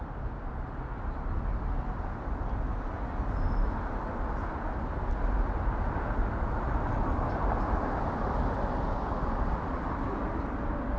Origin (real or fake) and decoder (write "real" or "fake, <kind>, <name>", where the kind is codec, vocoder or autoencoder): real